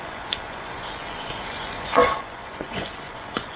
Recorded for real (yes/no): no